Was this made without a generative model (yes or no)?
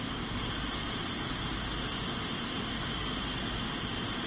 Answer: yes